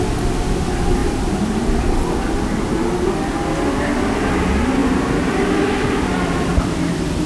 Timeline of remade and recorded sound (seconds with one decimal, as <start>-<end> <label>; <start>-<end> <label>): 0.0-1.0 recorded; 1.0-1.6 remade; 1.6-4.8 recorded; 4.8-6.7 remade; 6.7-7.3 recorded